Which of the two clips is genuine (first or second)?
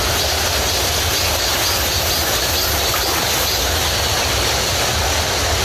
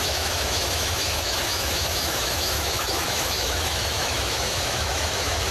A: first